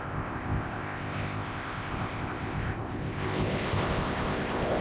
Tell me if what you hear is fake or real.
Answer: fake